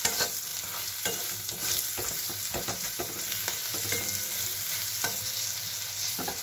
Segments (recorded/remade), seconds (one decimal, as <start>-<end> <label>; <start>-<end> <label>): 0.0-6.4 recorded